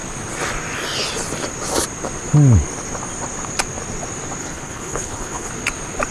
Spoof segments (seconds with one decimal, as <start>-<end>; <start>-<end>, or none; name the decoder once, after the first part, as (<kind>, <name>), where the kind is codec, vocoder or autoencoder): 4.4-5.5 (codec, HILCodec)